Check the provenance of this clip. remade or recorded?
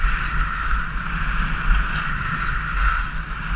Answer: recorded